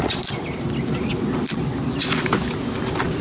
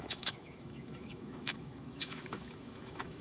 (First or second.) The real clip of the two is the first